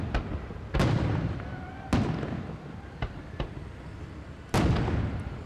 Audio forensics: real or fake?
real